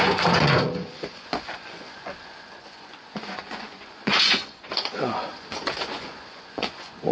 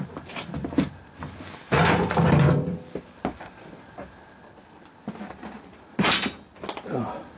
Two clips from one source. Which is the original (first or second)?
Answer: second